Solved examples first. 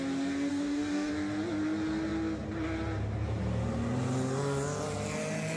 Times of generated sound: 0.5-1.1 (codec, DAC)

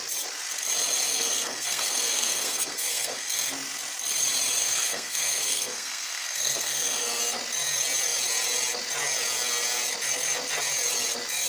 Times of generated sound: 1.1-3.5 (codec, SNAC); 4.6-7.2

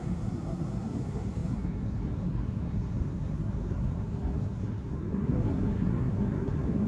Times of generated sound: 0.0-6.9 (codec, SNAC)

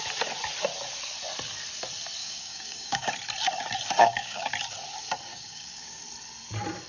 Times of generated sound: 2.2-3.1 (codec, DAC); 4.0-4.5; 5.3-6.0